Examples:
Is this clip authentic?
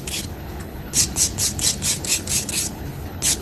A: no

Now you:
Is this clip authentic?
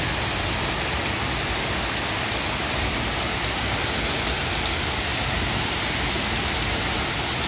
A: yes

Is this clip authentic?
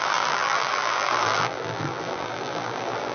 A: no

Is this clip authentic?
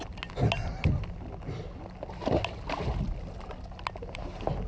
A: yes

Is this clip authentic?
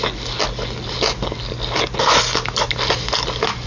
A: yes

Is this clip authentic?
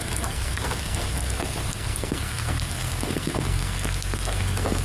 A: no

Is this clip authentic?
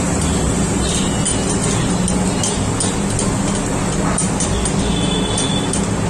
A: yes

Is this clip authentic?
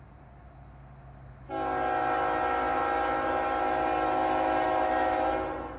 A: yes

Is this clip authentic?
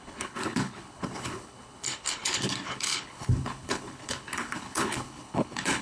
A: no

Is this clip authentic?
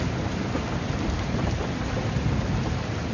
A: yes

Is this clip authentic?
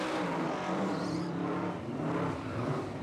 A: no